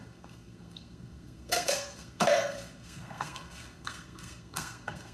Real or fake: fake